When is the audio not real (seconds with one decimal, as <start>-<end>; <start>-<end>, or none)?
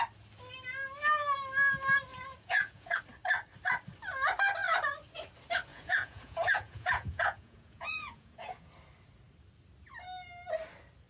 2.1-3.0; 5.7-8.7